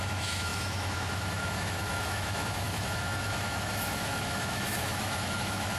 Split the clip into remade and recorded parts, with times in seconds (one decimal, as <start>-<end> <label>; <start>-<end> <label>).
0.0-5.8 remade